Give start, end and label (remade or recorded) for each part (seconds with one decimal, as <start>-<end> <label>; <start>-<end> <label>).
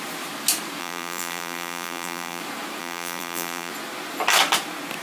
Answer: 0.0-0.8 recorded; 0.8-2.4 remade; 2.4-2.8 recorded; 2.8-3.7 remade; 3.7-5.0 recorded